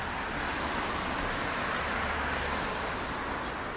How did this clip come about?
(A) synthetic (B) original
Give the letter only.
B